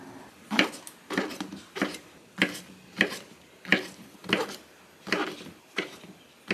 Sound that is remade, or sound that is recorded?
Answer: recorded